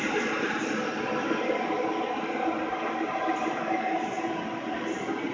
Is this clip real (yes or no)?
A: yes